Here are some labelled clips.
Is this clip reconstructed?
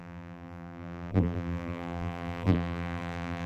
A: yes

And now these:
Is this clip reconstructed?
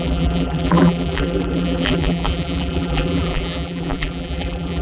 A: yes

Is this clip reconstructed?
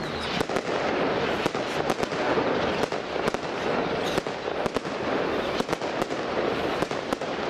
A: no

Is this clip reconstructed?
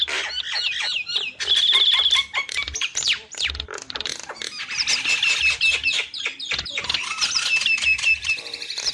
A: yes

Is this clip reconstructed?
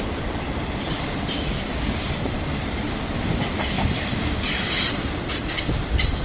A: yes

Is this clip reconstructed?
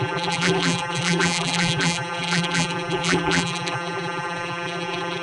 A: yes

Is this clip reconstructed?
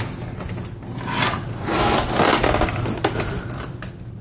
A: no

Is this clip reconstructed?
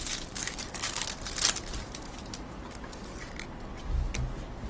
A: no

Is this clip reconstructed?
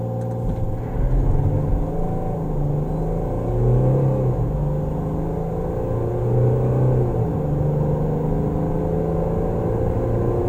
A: no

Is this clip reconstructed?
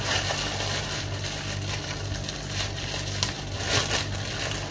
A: no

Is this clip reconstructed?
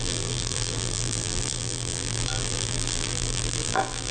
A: yes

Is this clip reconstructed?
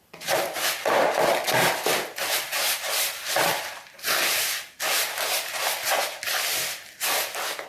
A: no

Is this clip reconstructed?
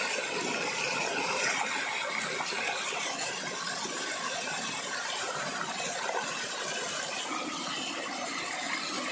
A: no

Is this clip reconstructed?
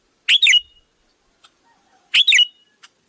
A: no